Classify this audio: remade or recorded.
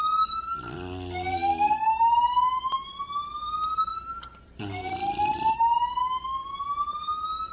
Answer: recorded